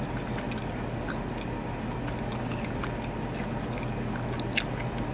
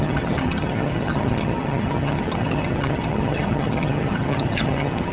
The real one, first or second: first